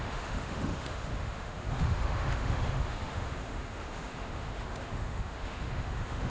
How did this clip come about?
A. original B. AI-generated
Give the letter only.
B